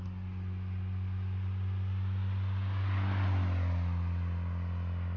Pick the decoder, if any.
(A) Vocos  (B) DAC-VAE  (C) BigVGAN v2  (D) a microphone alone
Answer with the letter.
D